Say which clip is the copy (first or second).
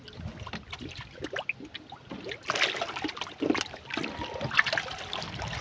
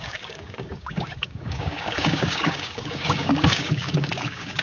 second